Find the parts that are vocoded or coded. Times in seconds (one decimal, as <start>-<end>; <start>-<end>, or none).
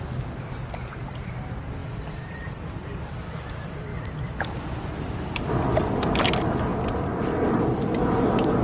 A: 1.8-2.6